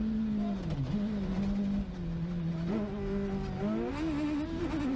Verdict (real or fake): real